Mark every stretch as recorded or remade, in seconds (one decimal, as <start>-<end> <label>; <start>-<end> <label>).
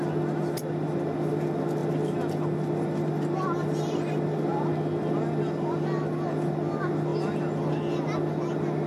0.0-8.9 recorded